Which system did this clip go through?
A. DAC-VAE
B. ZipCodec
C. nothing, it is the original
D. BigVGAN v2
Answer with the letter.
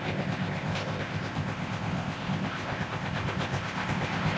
B